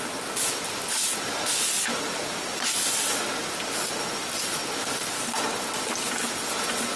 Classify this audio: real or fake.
real